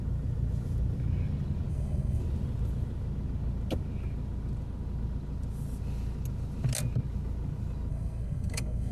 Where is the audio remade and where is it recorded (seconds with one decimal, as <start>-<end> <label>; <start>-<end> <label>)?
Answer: 0.0-1.7 recorded; 1.7-2.2 remade; 2.2-7.9 recorded; 7.9-8.9 remade

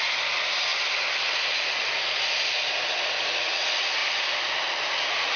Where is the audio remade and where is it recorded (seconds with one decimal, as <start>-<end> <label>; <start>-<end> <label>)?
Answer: 0.0-4.0 recorded; 4.0-5.0 remade; 5.0-5.4 recorded

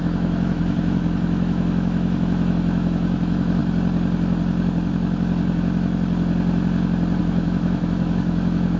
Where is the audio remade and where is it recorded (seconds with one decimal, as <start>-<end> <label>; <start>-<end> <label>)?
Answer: 0.0-3.6 remade; 3.6-7.2 recorded; 7.2-8.8 remade

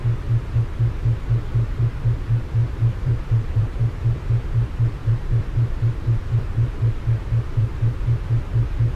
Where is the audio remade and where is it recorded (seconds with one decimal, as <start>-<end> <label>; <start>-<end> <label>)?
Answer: 0.0-2.6 recorded; 2.6-3.8 remade; 3.8-5.0 recorded; 5.0-8.3 remade; 8.3-9.0 recorded

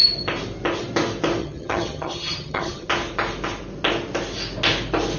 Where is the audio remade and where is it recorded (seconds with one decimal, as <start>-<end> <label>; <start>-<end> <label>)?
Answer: 0.0-1.4 recorded; 1.4-2.9 remade; 2.9-5.2 recorded